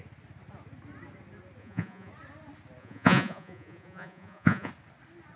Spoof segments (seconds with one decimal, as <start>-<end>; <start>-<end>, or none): 1.6-2.1; 2.8-4.7